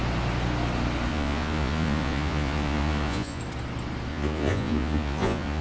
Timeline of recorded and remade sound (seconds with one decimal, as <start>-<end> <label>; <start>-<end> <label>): 0.0-1.1 recorded; 1.1-3.4 remade; 3.4-4.1 recorded; 4.1-5.6 remade